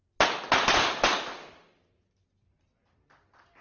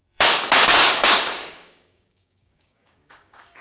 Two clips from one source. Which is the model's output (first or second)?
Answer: second